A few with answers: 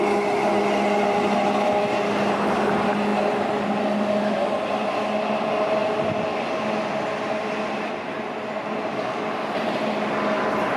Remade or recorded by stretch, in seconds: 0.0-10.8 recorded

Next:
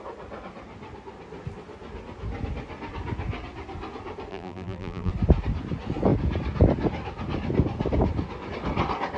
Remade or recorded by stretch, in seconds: 0.0-4.3 recorded; 4.3-5.1 remade; 5.1-9.2 recorded

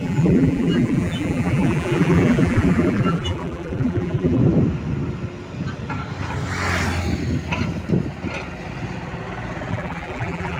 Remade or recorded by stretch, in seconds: 0.0-4.4 remade; 4.4-9.7 recorded; 9.7-10.6 remade

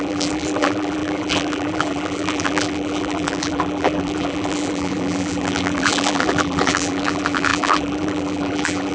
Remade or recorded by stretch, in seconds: 0.0-8.9 remade

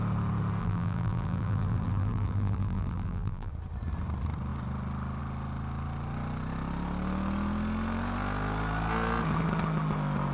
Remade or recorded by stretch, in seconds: 0.0-0.6 recorded; 0.6-3.5 remade; 3.5-10.3 recorded

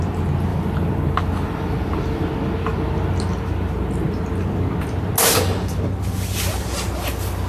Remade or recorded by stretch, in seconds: 0.0-0.5 recorded; 0.5-2.3 remade; 2.3-7.5 recorded